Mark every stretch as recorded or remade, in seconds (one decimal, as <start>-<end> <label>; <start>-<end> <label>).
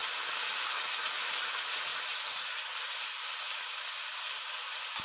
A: 0.0-5.0 recorded